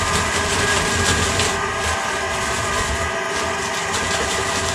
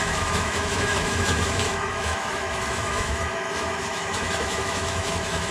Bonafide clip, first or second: first